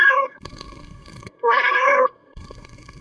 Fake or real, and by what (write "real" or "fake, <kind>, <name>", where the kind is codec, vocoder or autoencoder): fake, codec, SNAC